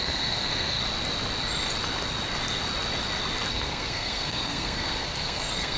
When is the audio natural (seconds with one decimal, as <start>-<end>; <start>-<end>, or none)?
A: 0.8-3.5

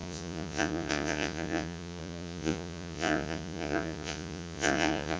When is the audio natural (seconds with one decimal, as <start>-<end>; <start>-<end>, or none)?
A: none

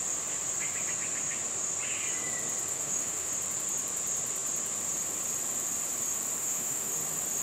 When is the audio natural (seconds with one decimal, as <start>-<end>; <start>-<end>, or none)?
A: 0.0-2.7; 3.3-6.4; 6.9-7.4

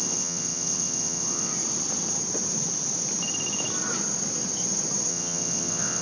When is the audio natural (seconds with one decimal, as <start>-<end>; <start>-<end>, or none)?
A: 1.5-5.1

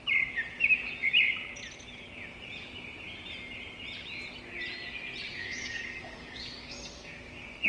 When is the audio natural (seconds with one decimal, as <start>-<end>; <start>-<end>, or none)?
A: 0.0-5.3